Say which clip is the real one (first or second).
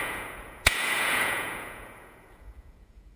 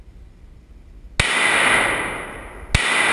second